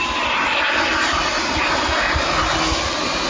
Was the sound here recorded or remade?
recorded